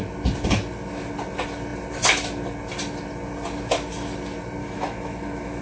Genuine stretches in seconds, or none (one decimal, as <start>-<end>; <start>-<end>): 0.0-4.6